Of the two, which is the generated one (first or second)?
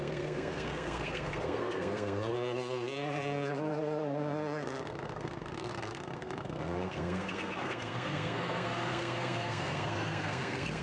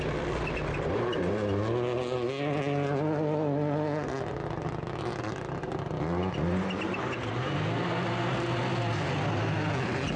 first